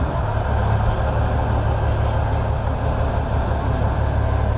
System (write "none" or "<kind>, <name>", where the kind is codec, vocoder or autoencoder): none